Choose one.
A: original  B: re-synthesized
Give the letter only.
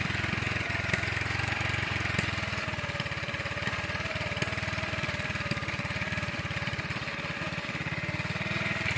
A